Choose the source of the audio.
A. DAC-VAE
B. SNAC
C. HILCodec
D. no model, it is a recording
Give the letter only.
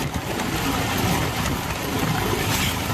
D